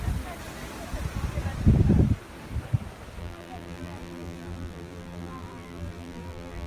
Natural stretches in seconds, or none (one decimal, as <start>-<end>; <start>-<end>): 0.0-3.2